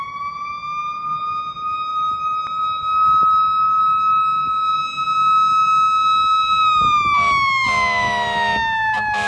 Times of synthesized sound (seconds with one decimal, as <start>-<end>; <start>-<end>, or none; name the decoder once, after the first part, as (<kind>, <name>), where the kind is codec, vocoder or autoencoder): 1.9-2.6 (vocoder, BigVGAN v2)